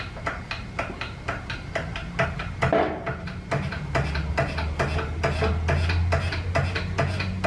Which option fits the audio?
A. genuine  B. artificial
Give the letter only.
A